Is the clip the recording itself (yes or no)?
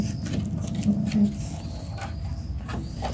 yes